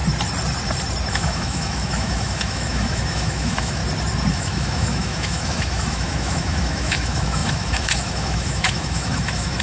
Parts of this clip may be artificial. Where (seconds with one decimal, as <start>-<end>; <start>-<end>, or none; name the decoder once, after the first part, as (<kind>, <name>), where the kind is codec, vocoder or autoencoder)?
1.1-3.8 (autoencoder, DAC-VAE); 4.3-9.6